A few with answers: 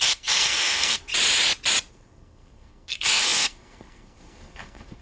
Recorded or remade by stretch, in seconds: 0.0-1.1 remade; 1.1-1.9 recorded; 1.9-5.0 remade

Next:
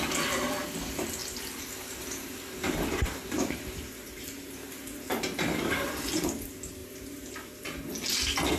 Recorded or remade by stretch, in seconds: 0.0-1.2 recorded; 1.2-6.3 remade; 6.3-6.8 recorded; 6.8-7.9 remade; 7.9-8.6 recorded

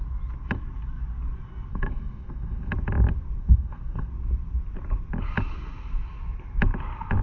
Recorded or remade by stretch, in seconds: 0.0-1.7 recorded; 1.7-2.7 remade; 2.7-3.4 recorded; 3.4-4.1 remade; 4.1-7.2 recorded

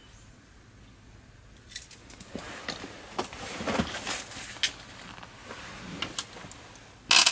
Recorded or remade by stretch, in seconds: 0.0-7.3 recorded

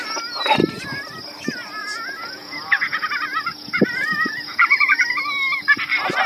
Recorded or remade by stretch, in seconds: 0.0-1.8 recorded; 1.8-5.0 remade; 5.0-6.3 recorded